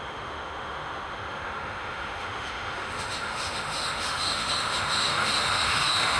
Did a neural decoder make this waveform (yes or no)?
yes